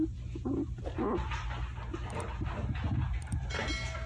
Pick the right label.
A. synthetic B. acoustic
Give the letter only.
B